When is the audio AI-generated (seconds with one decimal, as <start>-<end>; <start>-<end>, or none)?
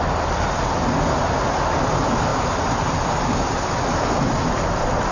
none